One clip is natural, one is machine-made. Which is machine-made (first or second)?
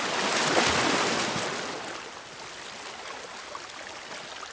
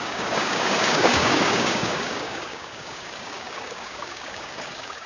second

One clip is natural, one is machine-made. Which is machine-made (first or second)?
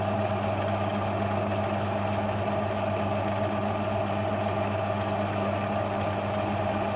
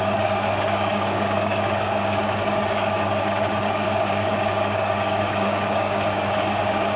second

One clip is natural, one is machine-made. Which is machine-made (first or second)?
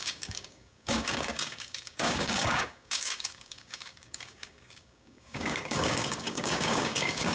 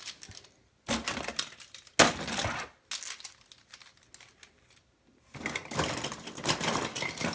first